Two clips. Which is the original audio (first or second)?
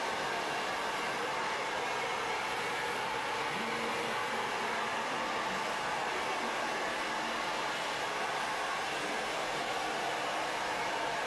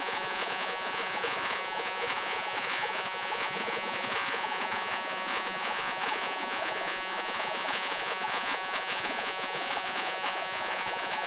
first